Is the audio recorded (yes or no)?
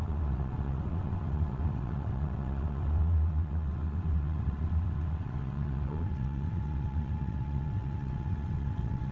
no